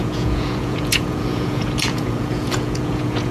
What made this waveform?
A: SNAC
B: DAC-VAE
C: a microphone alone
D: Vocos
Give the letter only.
D